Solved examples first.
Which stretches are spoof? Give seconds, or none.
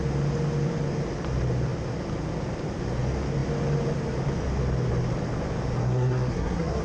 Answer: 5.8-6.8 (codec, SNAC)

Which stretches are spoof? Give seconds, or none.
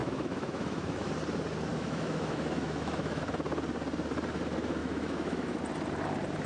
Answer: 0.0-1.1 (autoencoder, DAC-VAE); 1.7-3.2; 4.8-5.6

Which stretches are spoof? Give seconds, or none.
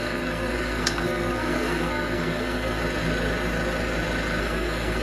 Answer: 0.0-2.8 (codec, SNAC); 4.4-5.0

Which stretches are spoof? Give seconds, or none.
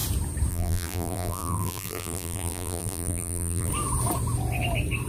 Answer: 0.5-3.7 (vocoder, BigVGAN v2)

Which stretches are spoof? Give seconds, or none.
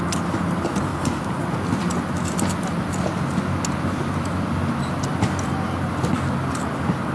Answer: none